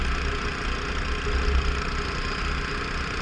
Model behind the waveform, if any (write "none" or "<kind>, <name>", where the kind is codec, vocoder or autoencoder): none